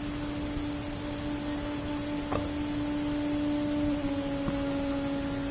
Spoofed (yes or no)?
no